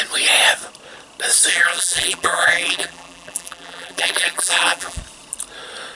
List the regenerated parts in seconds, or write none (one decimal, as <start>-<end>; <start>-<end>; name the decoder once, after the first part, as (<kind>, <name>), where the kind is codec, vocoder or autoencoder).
1.5-5.0 (vocoder, BigVGAN v2)